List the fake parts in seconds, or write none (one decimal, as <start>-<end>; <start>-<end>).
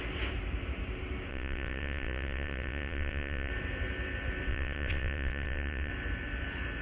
1.3-3.5; 4.5-5.9